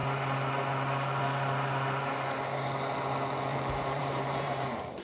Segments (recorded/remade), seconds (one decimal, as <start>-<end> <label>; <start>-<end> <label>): 0.0-3.5 recorded; 3.5-5.0 remade